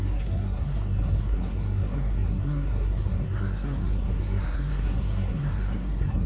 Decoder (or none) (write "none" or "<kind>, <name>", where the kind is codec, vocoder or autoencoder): codec, SNAC